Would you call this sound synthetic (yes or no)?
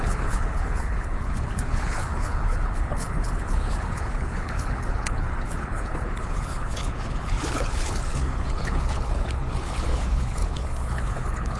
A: yes